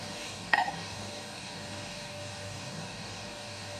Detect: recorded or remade remade